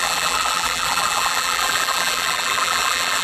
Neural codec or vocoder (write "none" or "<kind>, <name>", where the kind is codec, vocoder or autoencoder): vocoder, BigVGAN v2